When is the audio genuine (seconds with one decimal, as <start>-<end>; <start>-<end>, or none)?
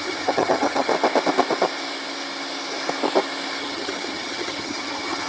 0.9-3.6